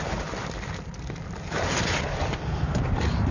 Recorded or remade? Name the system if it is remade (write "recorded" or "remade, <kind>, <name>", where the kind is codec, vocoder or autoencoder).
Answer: recorded